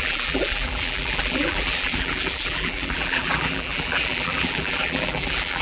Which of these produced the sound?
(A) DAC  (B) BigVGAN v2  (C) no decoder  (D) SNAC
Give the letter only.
B